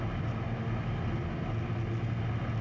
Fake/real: real